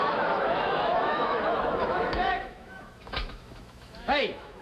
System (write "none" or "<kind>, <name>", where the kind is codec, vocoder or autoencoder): autoencoder, DAC-VAE